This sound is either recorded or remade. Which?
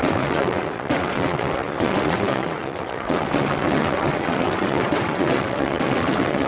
remade